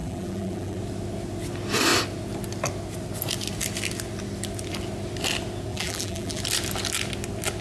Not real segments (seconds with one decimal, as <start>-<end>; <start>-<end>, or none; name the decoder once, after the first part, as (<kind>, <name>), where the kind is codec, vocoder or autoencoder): 0.0-0.8 (vocoder, BigVGAN v2); 5.7-6.4